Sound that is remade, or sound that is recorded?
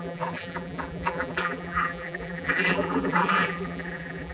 remade